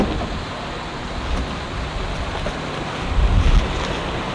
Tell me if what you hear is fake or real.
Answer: real